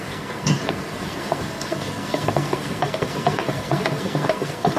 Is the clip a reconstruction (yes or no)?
yes